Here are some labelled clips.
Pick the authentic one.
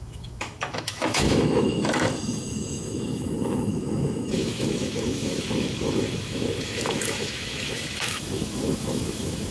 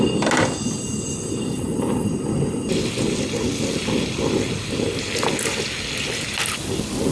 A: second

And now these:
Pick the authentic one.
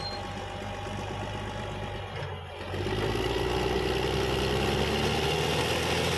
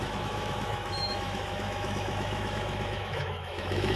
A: first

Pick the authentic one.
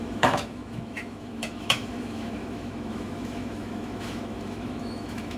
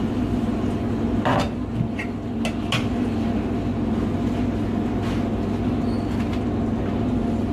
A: second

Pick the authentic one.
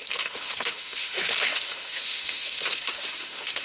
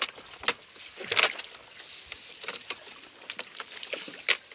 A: second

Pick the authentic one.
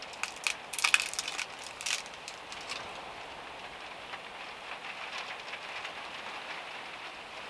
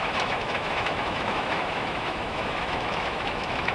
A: first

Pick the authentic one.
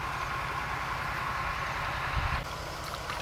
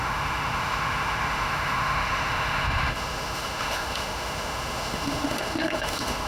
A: first